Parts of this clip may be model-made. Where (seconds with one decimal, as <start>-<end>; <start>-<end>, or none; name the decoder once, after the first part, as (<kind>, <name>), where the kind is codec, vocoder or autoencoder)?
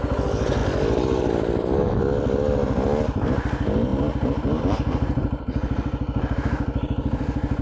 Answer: none